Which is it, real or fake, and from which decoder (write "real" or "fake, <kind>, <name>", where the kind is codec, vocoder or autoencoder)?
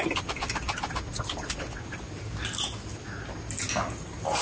real